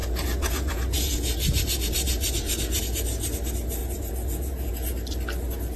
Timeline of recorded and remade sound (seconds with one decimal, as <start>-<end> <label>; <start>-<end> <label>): 0.0-2.8 remade; 2.8-3.8 recorded; 3.8-4.7 remade; 4.7-5.8 recorded